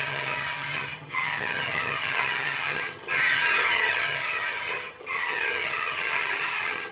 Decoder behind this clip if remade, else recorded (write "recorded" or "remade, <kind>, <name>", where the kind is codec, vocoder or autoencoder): remade, vocoder, HiFi-GAN